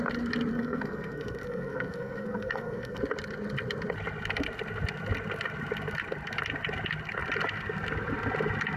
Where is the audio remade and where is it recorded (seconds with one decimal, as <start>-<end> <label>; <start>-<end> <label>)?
0.0-0.5 recorded; 0.5-3.0 remade; 3.0-8.8 recorded